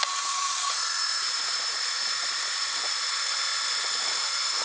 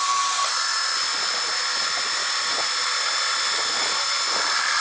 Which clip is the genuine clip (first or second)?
second